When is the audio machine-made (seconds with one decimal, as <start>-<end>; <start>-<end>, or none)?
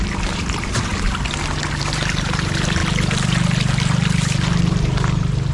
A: 0.0-0.9; 1.8-2.8; 4.7-5.5